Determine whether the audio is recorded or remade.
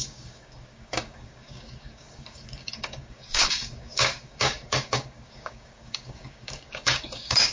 remade